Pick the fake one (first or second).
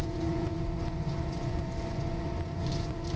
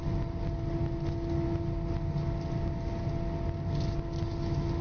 first